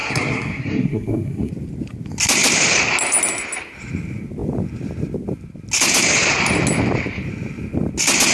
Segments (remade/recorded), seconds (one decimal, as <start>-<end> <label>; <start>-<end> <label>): 0.0-1.5 remade; 1.5-8.3 recorded